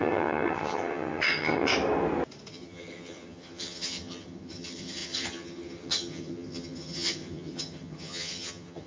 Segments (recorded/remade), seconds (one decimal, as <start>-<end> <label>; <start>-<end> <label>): 0.0-1.7 remade; 1.7-2.5 recorded; 2.5-8.9 remade